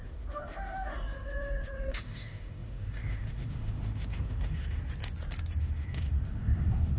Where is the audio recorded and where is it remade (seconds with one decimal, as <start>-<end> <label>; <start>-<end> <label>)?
0.0-4.8 remade; 4.8-5.6 recorded; 5.6-7.0 remade